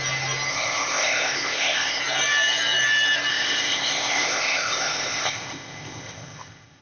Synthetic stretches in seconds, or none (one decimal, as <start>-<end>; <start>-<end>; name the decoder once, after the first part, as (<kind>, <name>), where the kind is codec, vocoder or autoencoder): 0.5-2.0 (codec, ZipCodec); 3.3-6.8